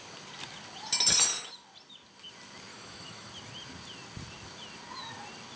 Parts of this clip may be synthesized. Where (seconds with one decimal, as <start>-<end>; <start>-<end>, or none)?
2.7-3.3